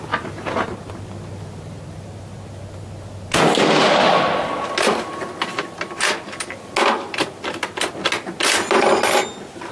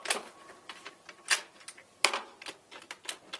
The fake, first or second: second